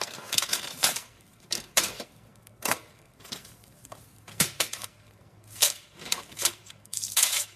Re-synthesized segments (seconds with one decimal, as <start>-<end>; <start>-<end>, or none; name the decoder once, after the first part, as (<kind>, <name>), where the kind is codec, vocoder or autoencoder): 0.0-7.6 (codec, SNAC)